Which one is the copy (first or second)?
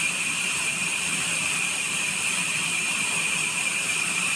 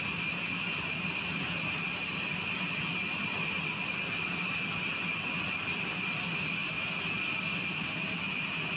first